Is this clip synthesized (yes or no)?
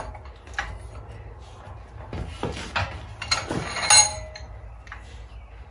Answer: no